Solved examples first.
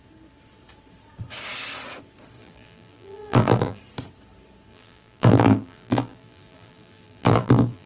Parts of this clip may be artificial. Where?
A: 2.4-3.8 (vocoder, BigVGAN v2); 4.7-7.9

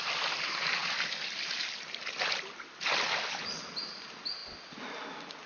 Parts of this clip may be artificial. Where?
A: none